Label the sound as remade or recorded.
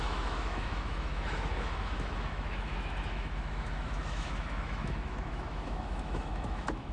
remade